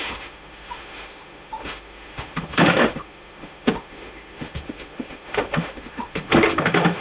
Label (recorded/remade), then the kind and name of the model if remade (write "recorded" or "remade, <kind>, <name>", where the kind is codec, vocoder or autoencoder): remade, autoencoder, DAC-VAE